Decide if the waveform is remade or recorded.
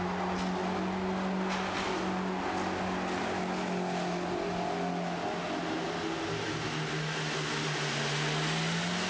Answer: recorded